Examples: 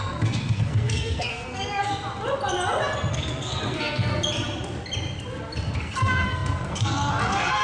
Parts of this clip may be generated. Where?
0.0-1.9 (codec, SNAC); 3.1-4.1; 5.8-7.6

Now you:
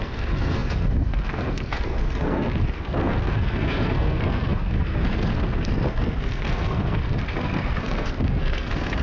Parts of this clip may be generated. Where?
0.0-9.0 (codec, SNAC)

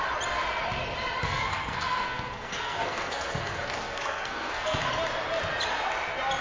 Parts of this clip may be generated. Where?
1.2-4.9 (codec, SNAC)

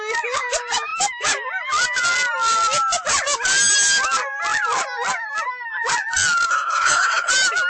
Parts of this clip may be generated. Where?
6.5-7.3 (codec, SNAC)

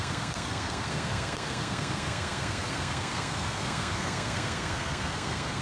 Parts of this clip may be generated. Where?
0.0-5.6 (codec, SNAC)

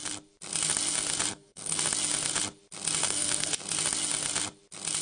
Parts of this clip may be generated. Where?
1.3-1.8 (codec, SNAC); 3.0-3.6

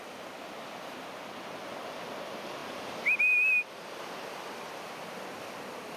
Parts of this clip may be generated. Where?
none

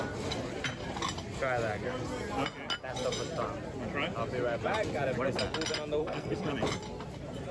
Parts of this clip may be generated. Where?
6.0-6.5 (codec, SNAC)